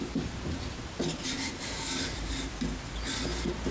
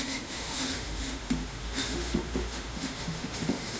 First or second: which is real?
first